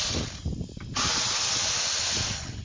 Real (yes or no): yes